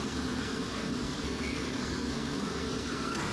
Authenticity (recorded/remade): remade